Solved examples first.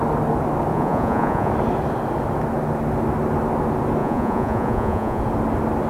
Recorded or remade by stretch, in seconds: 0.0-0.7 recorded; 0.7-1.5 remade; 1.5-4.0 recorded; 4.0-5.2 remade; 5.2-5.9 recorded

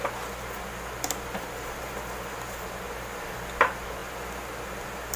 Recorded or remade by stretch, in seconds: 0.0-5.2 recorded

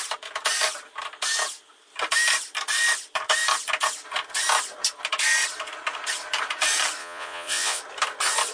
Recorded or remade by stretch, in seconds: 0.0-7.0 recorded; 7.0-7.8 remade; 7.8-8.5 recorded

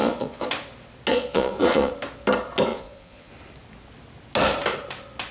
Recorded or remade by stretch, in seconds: 0.0-0.5 remade; 0.5-1.1 recorded; 1.1-1.9 remade; 1.9-2.7 recorded; 2.7-3.3 remade; 3.3-5.3 recorded

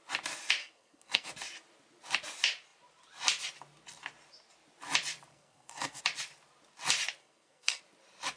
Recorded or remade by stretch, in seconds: 0.0-0.6 recorded; 0.6-1.3 remade; 1.3-5.3 recorded; 5.3-6.0 remade; 6.0-7.2 recorded; 7.2-7.8 remade; 7.8-8.4 recorded